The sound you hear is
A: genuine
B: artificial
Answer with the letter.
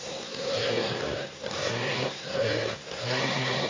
B